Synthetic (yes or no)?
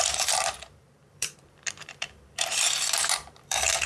yes